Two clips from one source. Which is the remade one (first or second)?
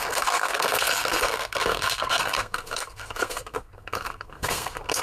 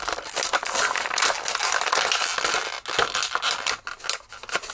first